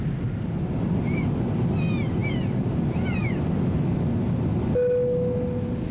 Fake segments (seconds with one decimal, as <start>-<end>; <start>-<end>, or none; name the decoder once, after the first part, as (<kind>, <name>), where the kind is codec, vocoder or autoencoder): none